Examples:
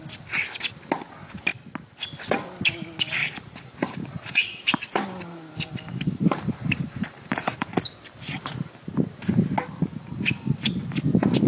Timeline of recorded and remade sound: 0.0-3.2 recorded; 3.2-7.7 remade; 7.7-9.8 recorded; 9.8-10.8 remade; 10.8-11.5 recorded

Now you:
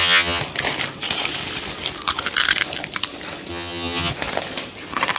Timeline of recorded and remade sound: 0.0-0.4 remade; 0.4-3.5 recorded; 3.5-4.1 remade; 4.1-5.2 recorded

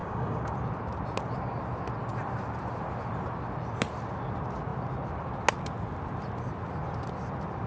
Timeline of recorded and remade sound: 0.0-0.5 remade; 0.5-7.7 recorded

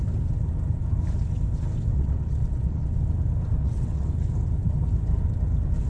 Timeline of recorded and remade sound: 0.0-1.9 recorded; 1.9-2.9 remade; 2.9-3.6 recorded; 3.6-4.1 remade; 4.1-5.9 recorded

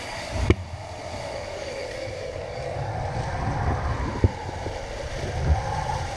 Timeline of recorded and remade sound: 0.0-0.6 remade; 0.6-1.2 recorded; 1.2-2.9 remade; 2.9-6.2 recorded